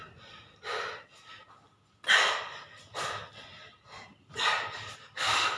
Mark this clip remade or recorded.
recorded